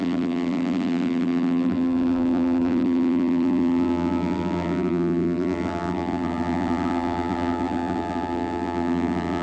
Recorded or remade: remade